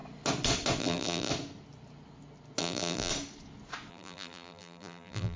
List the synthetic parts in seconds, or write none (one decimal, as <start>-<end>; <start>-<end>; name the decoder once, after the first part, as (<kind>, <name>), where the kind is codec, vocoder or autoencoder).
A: 0.8-1.3 (vocoder, BigVGAN v2); 2.6-3.1; 3.9-5.4